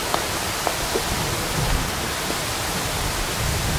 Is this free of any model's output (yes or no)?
yes